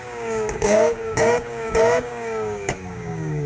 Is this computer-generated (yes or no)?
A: yes